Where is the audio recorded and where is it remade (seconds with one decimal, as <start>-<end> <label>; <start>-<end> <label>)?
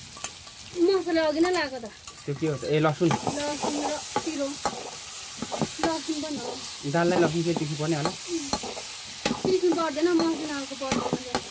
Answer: 0.0-3.2 recorded; 3.2-3.9 remade; 3.9-9.5 recorded; 9.5-10.0 remade; 10.0-11.5 recorded